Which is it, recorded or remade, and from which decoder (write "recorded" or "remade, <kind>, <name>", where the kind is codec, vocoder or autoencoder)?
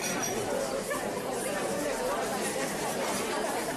recorded